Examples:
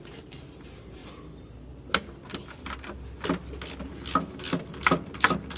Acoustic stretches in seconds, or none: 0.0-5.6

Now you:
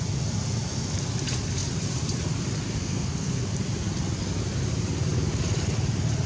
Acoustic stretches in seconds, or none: 0.0-2.8; 3.4-6.3

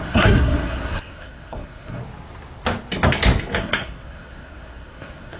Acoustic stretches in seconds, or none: 2.0-3.6

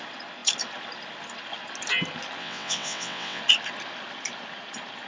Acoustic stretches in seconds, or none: 0.0-2.4; 3.4-5.1

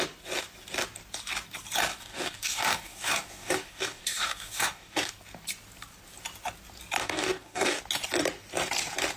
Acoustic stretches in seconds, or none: 0.0-1.9; 5.1-7.0; 7.8-9.2